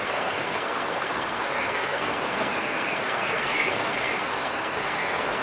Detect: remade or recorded remade